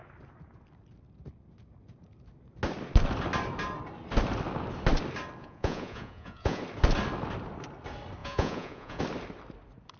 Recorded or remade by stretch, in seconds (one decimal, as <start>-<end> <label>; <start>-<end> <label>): 0.0-5.4 recorded; 5.4-6.6 remade; 6.6-8.2 recorded; 8.2-9.0 remade; 9.0-10.0 recorded